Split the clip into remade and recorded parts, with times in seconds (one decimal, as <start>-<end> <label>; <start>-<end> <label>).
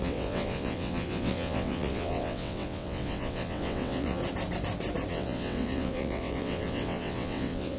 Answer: 0.0-4.2 remade; 4.2-5.1 recorded; 5.1-7.8 remade